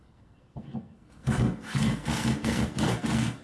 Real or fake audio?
fake